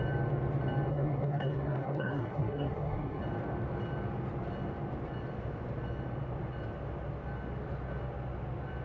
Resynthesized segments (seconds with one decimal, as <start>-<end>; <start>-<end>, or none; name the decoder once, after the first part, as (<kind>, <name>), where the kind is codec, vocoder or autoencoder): 0.9-3.2 (codec, SNAC)